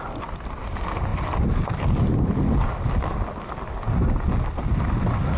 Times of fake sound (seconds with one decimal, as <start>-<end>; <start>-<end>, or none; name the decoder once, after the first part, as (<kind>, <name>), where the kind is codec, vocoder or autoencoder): none